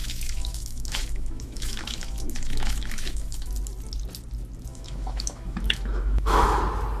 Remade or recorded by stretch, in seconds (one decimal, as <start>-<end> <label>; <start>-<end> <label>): 0.0-3.5 remade; 3.5-4.7 recorded; 4.7-6.6 remade; 6.6-7.0 recorded